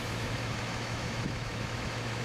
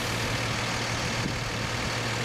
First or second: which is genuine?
second